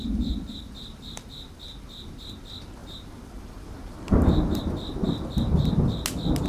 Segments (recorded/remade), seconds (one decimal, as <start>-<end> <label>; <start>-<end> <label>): 0.0-2.4 remade; 2.4-2.8 recorded; 2.8-4.6 remade; 4.6-6.5 recorded